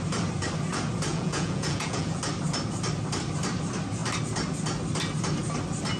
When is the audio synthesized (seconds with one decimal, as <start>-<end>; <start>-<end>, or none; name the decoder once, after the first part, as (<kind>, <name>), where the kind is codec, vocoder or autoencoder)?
1.1-2.2 (vocoder, Vocos)

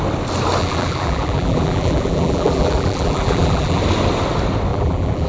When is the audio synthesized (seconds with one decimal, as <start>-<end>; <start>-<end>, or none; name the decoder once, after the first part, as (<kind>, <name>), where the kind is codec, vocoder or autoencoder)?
0.6-3.8 (vocoder, BigVGAN v2); 4.7-5.3